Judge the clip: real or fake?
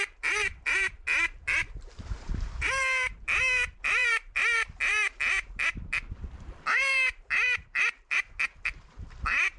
fake